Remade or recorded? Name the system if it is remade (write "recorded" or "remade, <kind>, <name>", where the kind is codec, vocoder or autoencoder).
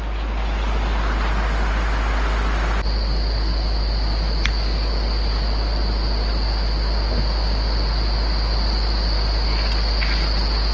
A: recorded